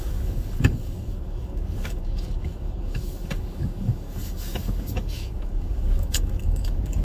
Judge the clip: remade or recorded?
remade